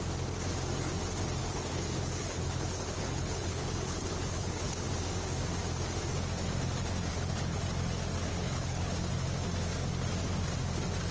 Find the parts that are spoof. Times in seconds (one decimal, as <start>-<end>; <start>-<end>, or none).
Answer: 1.4-4.9; 7.1-7.6; 8.3-9.1

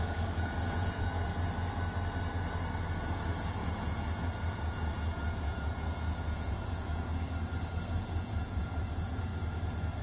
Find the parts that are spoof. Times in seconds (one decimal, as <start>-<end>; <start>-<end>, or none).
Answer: 0.0-1.3; 2.9-7.1; 7.8-9.3

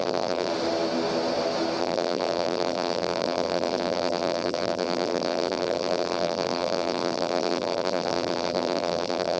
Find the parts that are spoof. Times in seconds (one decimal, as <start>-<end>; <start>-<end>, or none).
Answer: 0.0-0.5; 1.8-9.4

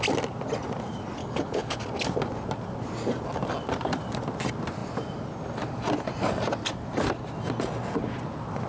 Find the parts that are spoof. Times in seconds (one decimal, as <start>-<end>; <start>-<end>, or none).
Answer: 1.2-1.8

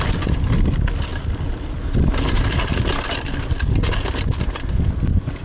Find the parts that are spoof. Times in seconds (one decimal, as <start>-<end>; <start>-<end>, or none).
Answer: 1.1-1.9

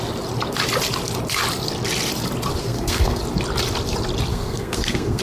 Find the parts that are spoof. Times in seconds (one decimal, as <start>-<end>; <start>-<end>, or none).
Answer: 2.6-3.2; 4.3-5.2